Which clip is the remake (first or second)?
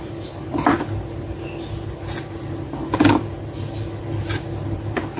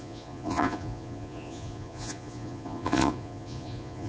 second